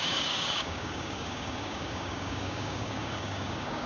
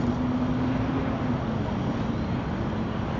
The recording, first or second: second